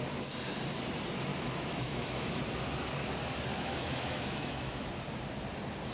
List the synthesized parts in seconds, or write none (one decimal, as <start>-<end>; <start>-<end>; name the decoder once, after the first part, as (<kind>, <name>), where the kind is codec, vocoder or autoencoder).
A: 1.3-2.3 (autoencoder, DAC-VAE); 3.5-4.9